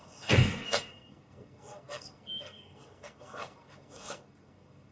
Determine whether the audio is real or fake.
fake